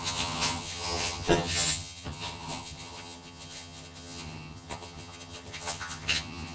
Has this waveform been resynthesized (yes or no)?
yes